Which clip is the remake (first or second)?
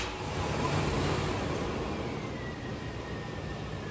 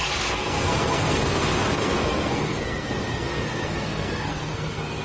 second